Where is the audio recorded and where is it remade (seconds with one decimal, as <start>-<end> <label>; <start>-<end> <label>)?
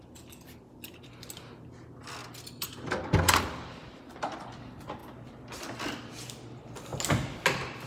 0.0-7.9 recorded